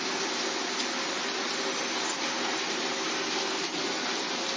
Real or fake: real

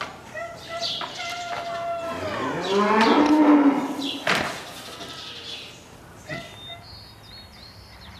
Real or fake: real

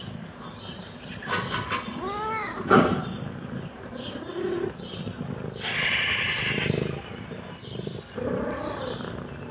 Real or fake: real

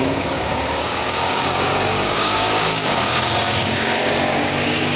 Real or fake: fake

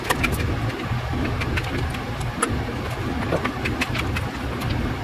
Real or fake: real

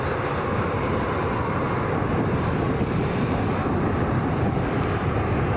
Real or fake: real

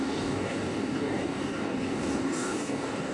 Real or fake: fake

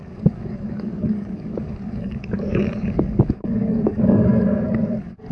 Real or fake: fake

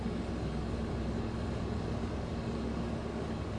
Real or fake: fake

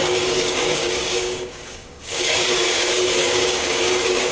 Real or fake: fake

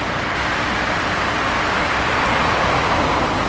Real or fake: real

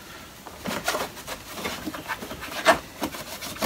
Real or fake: real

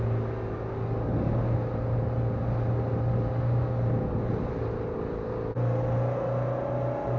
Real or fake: real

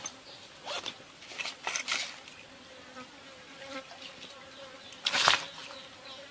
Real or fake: real